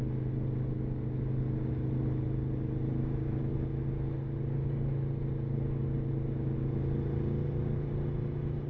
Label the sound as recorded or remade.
recorded